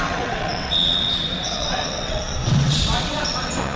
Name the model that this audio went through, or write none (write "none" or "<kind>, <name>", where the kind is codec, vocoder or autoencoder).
vocoder, WaveNeXt